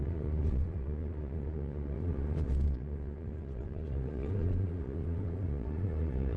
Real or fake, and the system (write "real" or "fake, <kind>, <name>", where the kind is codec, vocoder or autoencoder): fake, vocoder, Vocos